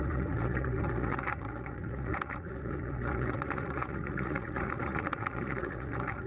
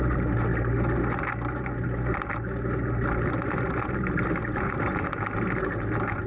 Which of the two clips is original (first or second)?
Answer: second